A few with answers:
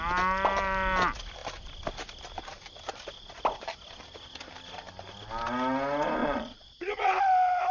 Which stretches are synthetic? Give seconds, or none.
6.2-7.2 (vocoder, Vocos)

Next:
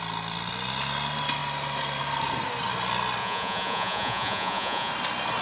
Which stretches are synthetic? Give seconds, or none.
3.2-4.9 (vocoder, Vocos)

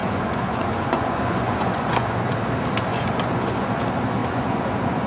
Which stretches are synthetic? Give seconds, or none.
0.0-2.2 (vocoder, Vocos); 2.9-3.8; 4.2-5.1

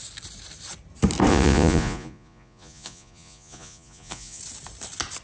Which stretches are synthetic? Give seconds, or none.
1.3-4.4 (vocoder, Vocos)